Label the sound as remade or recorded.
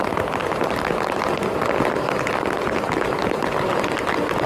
recorded